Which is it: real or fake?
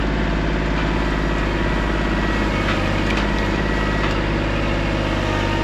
real